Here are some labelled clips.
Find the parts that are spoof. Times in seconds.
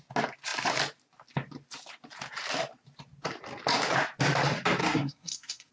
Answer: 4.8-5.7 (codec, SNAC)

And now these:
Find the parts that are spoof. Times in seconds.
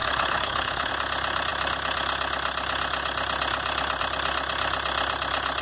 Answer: 0.0-0.9 (codec, HILCodec)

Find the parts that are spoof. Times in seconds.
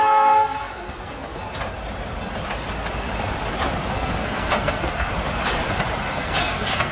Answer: 0.0-1.3 (codec, SNAC); 3.9-5.1; 6.1-6.9